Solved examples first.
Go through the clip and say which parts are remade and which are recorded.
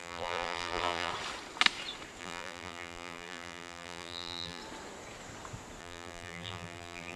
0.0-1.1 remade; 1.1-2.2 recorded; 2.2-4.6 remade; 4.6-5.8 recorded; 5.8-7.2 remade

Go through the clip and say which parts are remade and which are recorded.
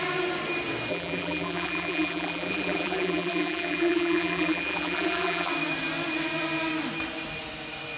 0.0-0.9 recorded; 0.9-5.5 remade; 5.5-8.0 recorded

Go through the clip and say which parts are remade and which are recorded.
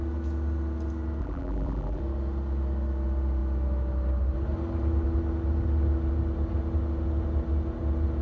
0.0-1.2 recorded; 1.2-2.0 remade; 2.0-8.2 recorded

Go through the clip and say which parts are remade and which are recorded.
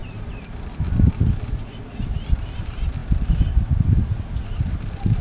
0.0-3.0 remade; 3.0-4.0 recorded; 4.0-5.2 remade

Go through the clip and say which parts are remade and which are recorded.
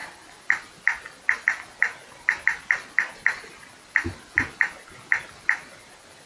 0.0-6.3 recorded